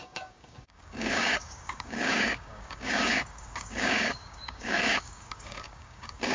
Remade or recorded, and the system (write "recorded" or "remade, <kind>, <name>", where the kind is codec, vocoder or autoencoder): remade, codec, DAC